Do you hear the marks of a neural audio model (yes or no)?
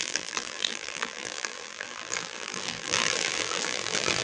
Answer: yes